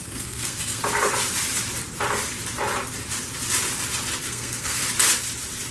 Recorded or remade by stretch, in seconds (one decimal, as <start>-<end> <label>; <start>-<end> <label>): 0.0-0.8 remade; 0.8-4.2 recorded; 4.2-4.8 remade; 4.8-5.7 recorded